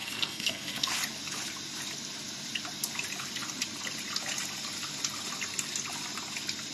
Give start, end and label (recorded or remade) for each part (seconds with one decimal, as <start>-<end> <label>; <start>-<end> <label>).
0.0-0.9 remade; 0.9-6.7 recorded